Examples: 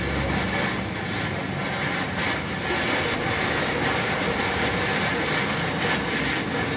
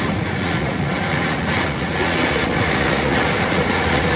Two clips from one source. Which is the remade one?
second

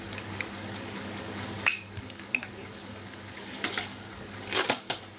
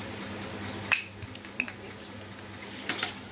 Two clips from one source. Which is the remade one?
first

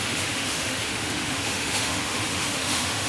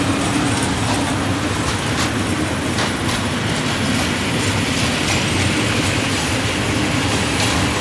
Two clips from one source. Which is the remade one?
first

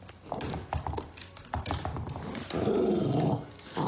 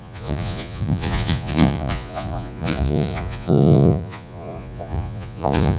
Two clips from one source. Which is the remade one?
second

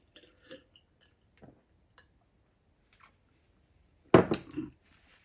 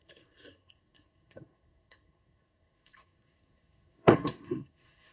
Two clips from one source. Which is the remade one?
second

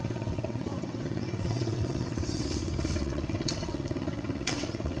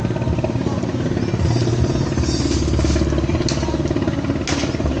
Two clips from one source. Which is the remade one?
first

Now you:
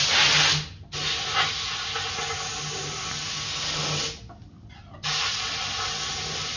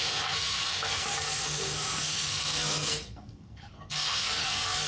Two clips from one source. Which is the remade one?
second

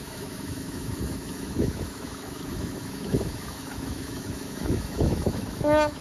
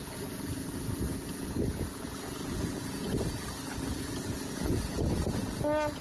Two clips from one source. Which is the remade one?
first